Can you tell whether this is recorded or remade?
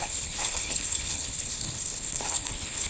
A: remade